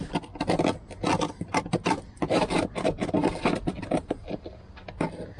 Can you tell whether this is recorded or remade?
recorded